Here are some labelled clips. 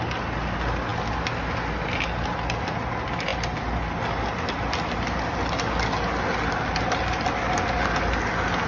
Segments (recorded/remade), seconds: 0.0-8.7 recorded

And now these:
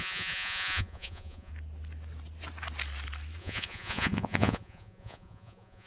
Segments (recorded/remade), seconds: 0.0-1.5 remade; 1.5-3.4 recorded; 3.4-5.9 remade

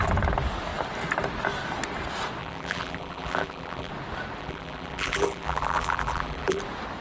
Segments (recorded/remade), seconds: 0.0-2.4 recorded; 2.4-3.9 remade; 3.9-4.4 recorded; 4.4-6.6 remade; 6.6-7.0 recorded

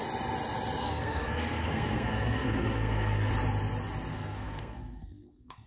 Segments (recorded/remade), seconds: 0.0-0.8 recorded; 0.8-3.3 remade; 3.3-4.1 recorded; 4.1-5.7 remade

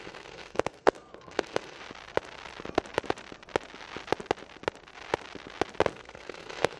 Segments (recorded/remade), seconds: 0.0-1.8 remade; 1.8-5.9 recorded; 5.9-6.8 remade

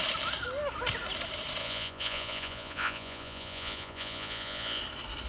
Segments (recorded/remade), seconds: 0.0-1.6 recorded; 1.6-4.8 remade; 4.8-5.3 recorded